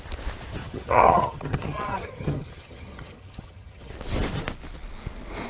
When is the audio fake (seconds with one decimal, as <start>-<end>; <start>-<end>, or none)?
0.6-3.9